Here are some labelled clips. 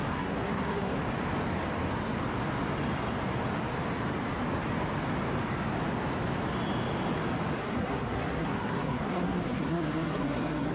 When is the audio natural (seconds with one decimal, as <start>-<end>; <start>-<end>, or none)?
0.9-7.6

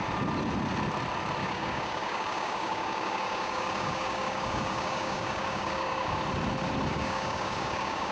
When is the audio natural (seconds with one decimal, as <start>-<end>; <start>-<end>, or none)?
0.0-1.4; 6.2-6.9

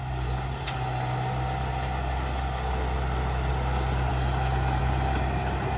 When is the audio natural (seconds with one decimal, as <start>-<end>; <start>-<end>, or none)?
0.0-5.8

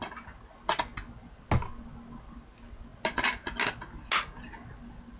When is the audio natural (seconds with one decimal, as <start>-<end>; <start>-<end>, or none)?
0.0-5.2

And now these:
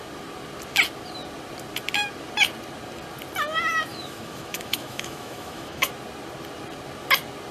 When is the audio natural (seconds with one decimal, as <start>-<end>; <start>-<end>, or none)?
0.0-3.9; 5.9-7.5

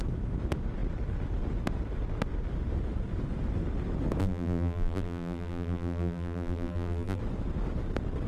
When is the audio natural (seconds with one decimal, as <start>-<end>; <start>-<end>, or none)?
0.0-4.2; 7.2-8.3

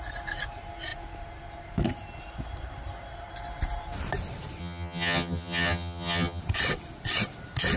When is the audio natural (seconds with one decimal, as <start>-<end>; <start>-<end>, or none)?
0.0-4.6; 6.4-7.8

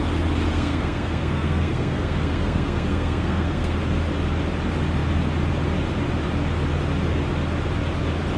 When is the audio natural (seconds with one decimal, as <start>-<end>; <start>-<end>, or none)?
0.0-0.5; 3.8-8.4